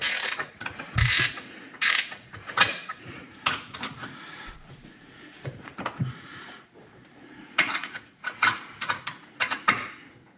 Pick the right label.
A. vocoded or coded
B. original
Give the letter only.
A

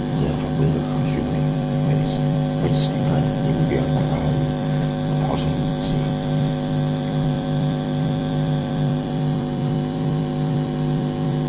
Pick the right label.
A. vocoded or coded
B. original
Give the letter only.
A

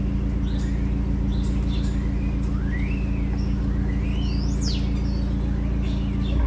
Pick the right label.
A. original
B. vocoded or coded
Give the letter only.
A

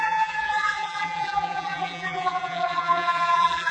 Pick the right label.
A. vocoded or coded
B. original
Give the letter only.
A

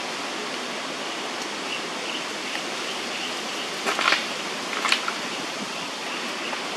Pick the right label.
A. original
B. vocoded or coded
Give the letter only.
A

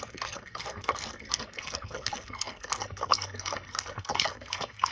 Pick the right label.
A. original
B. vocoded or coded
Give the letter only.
B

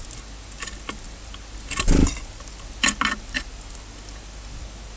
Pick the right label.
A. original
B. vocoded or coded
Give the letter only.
A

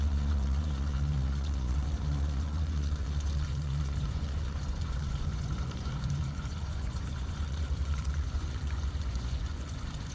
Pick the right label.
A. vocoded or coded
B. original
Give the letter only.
A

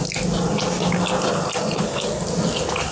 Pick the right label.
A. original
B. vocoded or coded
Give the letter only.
A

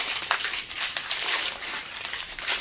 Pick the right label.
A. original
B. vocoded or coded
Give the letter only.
B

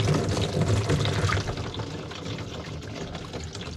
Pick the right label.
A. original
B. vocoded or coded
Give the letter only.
A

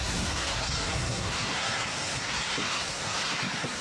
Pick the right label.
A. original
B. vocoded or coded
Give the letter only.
B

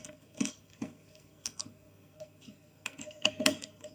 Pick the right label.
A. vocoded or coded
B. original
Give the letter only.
A